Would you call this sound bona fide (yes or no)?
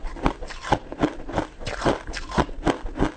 yes